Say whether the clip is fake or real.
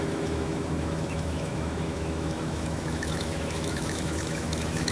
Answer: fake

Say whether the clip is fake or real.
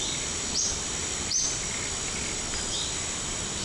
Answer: real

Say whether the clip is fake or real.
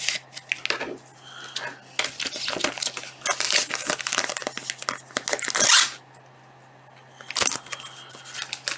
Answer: real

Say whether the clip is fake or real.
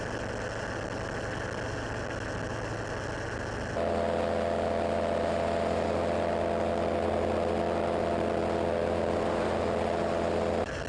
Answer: real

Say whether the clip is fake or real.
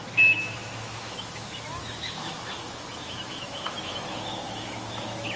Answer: fake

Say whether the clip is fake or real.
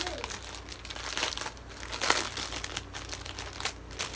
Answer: real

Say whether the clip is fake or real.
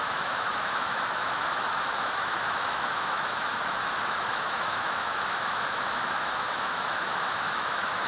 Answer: fake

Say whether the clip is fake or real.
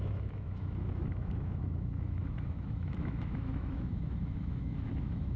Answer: fake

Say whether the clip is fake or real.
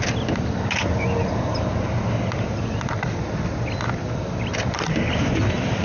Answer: real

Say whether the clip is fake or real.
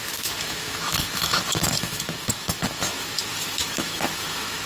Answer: fake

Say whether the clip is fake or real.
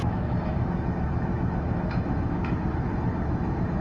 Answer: fake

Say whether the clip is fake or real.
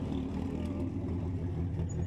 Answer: real